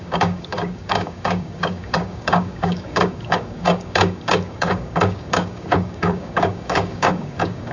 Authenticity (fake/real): fake